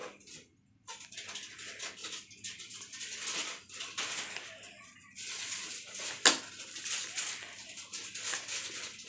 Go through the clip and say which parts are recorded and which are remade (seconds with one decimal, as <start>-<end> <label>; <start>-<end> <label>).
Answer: 0.0-9.1 recorded

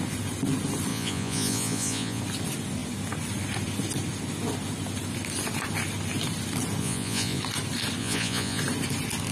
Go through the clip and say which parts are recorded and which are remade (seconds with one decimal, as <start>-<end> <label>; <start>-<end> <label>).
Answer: 0.0-0.9 recorded; 0.9-2.2 remade; 2.2-6.8 recorded; 6.8-7.4 remade; 7.4-8.0 recorded; 8.0-8.6 remade; 8.6-9.3 recorded